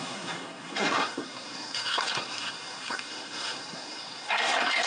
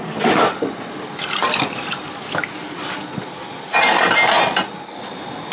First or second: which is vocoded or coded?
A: first